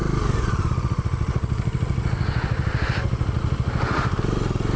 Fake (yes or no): no